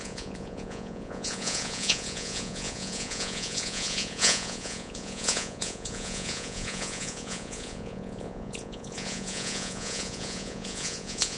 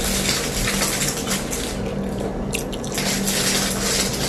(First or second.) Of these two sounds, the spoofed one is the first